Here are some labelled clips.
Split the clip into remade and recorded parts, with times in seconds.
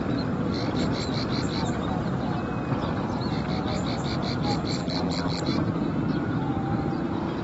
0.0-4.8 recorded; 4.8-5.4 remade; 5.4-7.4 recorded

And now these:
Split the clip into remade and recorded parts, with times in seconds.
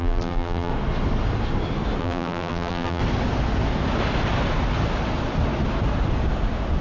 0.0-0.7 remade; 0.7-2.0 recorded; 2.0-3.0 remade; 3.0-6.8 recorded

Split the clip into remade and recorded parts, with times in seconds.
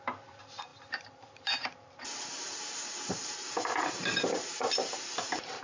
0.0-5.6 remade